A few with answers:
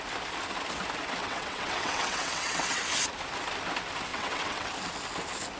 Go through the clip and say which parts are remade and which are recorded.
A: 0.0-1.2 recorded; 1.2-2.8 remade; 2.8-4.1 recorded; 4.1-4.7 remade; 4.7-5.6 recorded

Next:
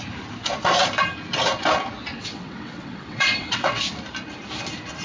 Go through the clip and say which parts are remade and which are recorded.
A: 0.0-2.1 recorded; 2.1-3.8 remade; 3.8-5.0 recorded

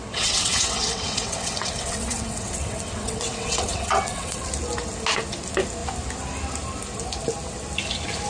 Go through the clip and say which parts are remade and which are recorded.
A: 0.0-4.5 remade; 4.5-8.3 recorded

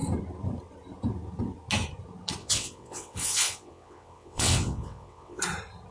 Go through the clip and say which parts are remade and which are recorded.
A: 0.0-2.4 recorded; 2.4-5.4 remade; 5.4-5.9 recorded